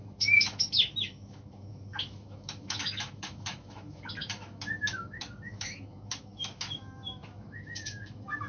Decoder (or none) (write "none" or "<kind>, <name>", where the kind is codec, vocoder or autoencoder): autoencoder, DAC-VAE